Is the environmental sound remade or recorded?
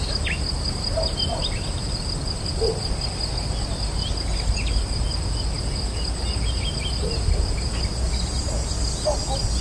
recorded